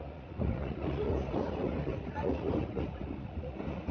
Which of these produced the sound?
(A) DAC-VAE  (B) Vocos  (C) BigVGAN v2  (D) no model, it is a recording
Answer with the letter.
B